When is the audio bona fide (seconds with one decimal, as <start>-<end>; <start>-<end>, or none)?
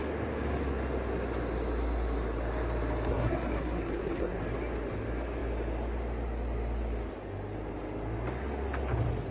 0.0-3.1; 4.4-9.3